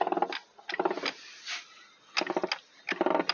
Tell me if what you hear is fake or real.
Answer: real